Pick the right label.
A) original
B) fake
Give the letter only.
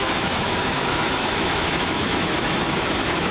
B